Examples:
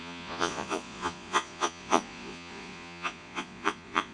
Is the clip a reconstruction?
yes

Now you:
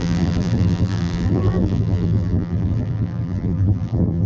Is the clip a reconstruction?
yes